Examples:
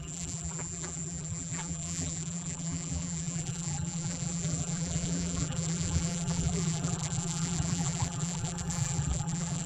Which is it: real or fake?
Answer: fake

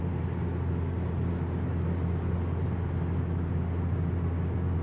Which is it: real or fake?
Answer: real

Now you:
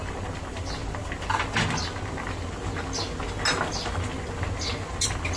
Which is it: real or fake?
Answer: real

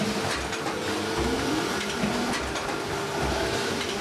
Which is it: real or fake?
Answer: real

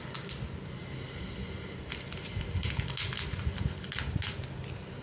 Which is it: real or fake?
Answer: real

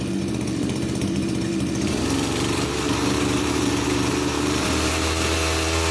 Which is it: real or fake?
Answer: fake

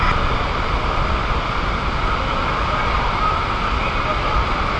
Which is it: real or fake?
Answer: real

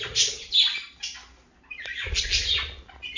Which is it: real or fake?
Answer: real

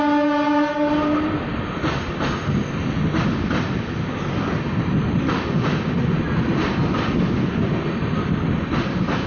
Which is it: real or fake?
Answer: real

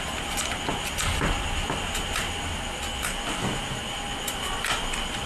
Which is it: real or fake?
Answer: real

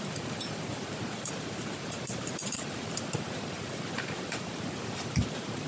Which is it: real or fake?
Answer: fake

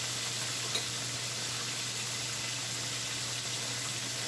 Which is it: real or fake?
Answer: real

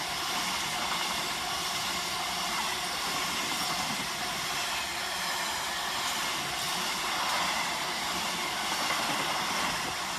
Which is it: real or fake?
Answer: real